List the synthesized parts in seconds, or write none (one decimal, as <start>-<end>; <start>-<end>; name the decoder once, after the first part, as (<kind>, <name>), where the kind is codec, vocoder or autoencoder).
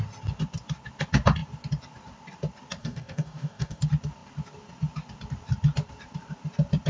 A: 2.8-3.8 (codec, DAC)